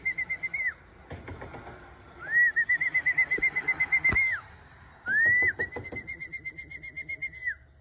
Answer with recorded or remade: recorded